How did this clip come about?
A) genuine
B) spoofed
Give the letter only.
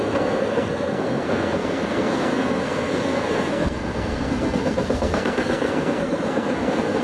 B